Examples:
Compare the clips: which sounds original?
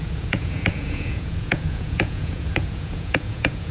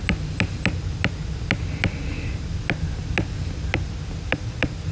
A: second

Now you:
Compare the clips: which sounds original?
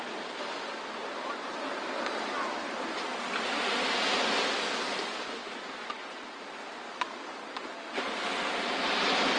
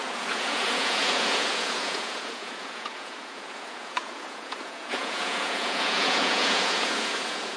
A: first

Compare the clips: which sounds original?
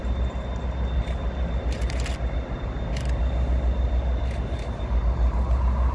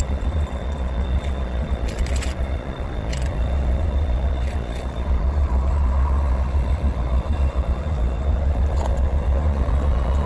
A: first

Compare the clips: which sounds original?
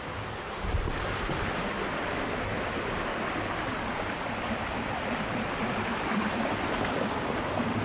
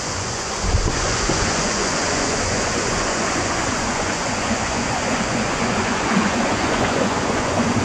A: first